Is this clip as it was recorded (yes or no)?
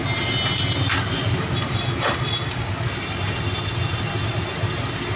yes